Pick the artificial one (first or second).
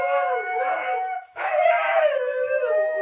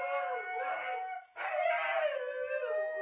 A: first